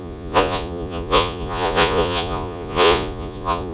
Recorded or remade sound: remade